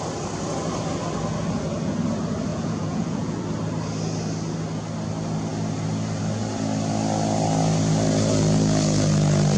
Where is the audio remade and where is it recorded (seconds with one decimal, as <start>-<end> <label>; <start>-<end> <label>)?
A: 0.0-2.5 recorded; 2.5-3.4 remade; 3.4-9.6 recorded